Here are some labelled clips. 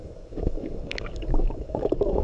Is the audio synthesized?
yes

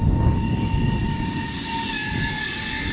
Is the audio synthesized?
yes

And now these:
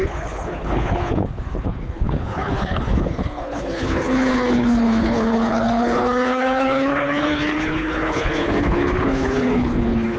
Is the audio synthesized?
yes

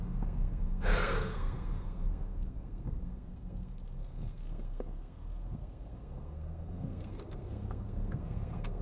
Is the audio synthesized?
yes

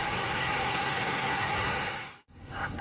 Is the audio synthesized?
yes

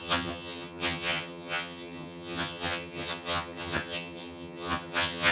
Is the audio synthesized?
yes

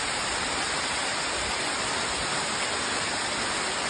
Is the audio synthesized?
no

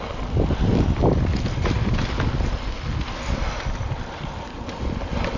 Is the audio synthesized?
no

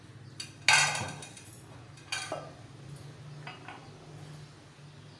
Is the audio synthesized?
no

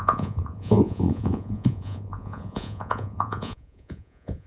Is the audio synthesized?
yes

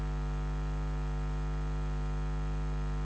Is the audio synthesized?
no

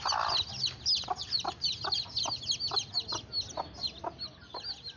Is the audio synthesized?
no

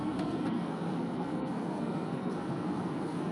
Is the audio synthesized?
yes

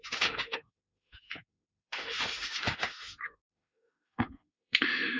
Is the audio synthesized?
yes